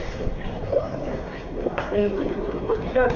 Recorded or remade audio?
remade